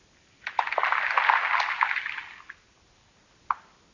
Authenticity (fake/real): real